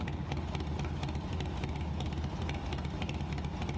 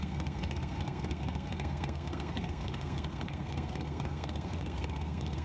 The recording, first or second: first